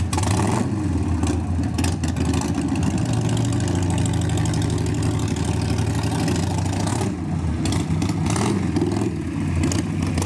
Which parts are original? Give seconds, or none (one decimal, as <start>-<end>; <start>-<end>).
0.0-10.3